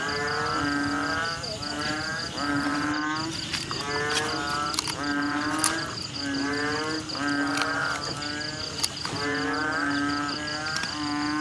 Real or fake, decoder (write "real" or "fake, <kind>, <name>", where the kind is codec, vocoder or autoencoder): real